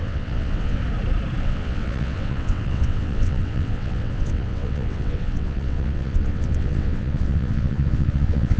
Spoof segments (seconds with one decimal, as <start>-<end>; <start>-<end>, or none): 0.0-0.8; 1.4-8.6

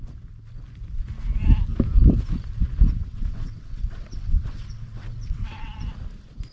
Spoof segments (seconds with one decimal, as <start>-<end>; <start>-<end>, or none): 3.0-5.8

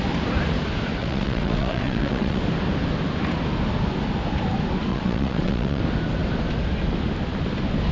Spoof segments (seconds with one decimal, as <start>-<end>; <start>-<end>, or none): 1.0-2.4; 4.9-5.8

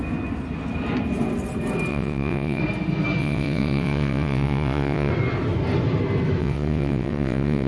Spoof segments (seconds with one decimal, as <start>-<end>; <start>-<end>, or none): 1.9-2.6; 3.2-5.1; 6.4-7.7

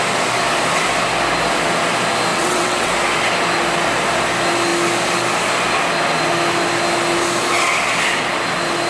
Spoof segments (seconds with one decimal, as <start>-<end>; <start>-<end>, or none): 2.3-2.9

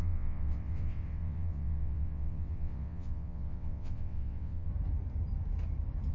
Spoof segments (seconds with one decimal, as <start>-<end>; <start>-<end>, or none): 0.0-4.7

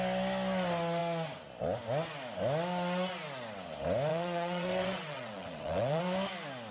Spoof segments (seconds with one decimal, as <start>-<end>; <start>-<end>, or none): 4.1-6.0

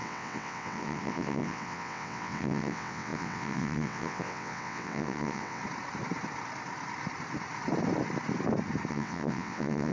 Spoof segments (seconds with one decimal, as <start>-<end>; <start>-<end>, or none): 0.0-5.6; 8.9-9.9